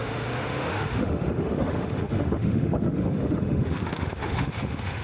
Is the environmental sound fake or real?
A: fake